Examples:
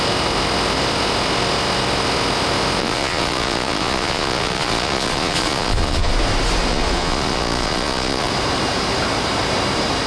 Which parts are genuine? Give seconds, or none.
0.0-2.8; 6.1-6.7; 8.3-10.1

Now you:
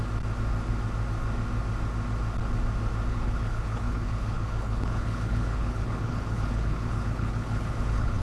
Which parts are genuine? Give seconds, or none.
0.0-3.1

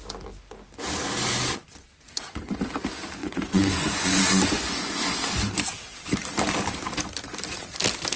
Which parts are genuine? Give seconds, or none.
0.0-1.8; 2.5-3.2; 5.2-8.2

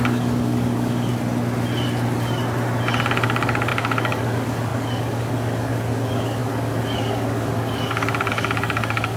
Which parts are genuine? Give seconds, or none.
1.1-3.1